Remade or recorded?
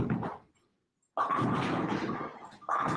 recorded